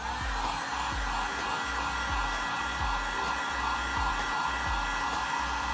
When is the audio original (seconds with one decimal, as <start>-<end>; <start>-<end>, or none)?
0.0-5.7